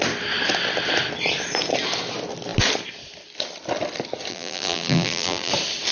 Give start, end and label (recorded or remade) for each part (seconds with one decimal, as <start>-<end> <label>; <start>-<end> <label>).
0.0-4.3 recorded; 4.3-5.5 remade; 5.5-5.9 recorded

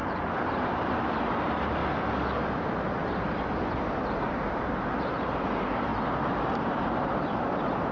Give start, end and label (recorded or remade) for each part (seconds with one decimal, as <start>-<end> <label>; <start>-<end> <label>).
0.0-1.8 remade; 1.8-2.6 recorded; 2.6-3.0 remade; 3.0-4.3 recorded; 4.3-7.9 remade

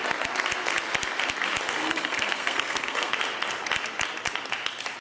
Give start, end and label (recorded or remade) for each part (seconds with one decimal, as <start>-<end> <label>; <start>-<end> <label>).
0.0-1.8 recorded; 1.8-3.1 remade; 3.1-5.0 recorded

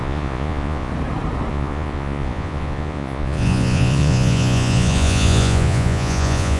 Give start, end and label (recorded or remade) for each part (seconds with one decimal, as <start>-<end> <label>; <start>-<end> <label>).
0.0-0.9 remade; 0.9-1.5 recorded; 1.5-6.6 remade

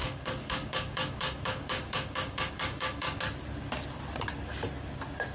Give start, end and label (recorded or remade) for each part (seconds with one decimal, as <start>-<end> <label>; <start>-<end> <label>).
0.0-3.2 remade; 3.2-5.3 recorded

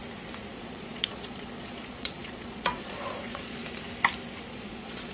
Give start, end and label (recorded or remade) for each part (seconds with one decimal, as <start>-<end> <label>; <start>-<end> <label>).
0.0-0.5 recorded; 0.5-3.6 remade; 3.6-4.5 recorded; 4.5-5.1 remade

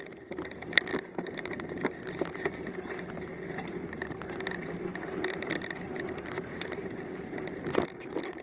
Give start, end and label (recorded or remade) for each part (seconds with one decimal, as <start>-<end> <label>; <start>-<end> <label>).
0.0-0.9 recorded; 0.9-1.7 remade; 1.7-8.4 recorded

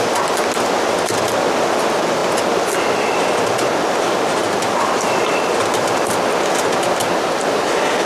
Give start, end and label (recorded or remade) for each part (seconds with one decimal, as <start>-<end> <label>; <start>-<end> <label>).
0.0-4.4 recorded; 4.4-8.1 remade